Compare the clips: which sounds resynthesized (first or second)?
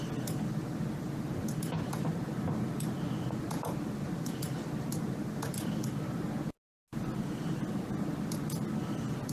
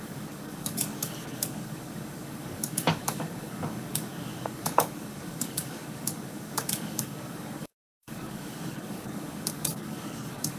second